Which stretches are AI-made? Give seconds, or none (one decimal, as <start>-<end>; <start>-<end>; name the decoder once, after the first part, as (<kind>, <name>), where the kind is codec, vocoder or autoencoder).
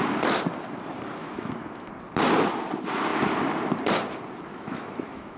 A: 1.2-1.9 (autoencoder, DAC-VAE); 4.5-5.4